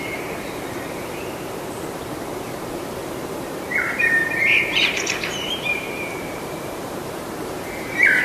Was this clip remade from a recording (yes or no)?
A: yes